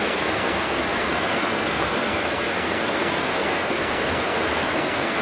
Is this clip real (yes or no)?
no